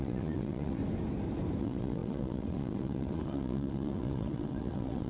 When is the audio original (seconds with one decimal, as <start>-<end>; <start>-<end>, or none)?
0.8-1.6

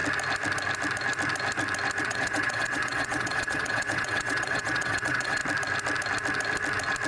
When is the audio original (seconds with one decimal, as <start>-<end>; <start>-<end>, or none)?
0.0-2.0; 5.4-7.1

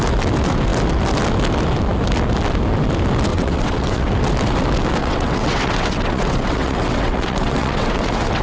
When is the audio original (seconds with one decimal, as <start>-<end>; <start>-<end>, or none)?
0.0-3.3; 4.1-5.0

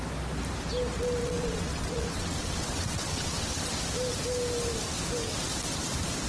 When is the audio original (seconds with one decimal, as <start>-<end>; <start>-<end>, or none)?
0.0-1.2; 3.8-6.3

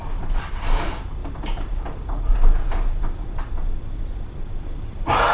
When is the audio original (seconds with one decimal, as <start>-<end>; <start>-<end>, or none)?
0.0-5.3